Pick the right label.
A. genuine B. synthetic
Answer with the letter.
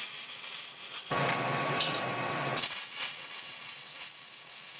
B